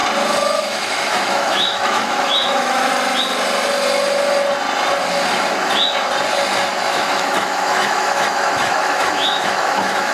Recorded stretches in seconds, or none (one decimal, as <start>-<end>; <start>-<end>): 0.0-0.6; 2.9-6.8

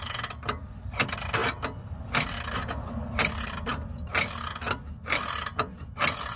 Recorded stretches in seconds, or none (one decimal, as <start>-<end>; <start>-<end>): 0.0-6.4

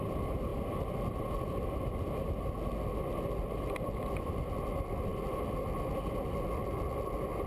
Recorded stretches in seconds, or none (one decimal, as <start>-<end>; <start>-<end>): 0.0-7.5

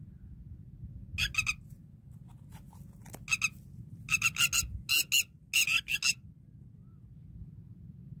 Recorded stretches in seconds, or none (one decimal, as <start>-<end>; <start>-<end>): 0.0-8.2

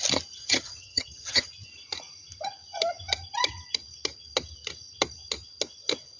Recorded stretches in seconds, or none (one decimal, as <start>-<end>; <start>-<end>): 0.0-0.4; 1.5-6.2

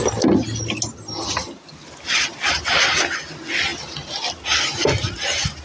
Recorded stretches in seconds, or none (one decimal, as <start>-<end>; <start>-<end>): 0.0-5.6